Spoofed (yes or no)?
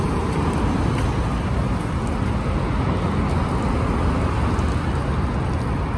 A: no